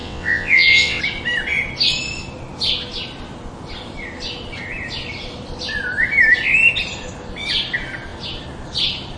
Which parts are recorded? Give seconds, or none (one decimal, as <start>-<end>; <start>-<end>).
1.0-9.2